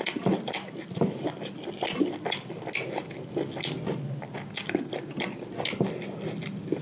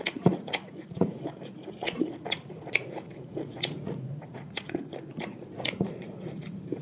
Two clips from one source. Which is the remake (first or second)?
second